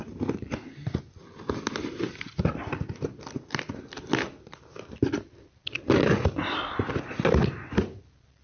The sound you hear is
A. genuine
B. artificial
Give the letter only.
A